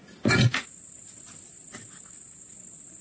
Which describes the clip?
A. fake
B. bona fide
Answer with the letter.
B